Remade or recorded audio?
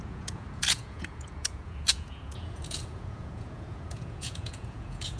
remade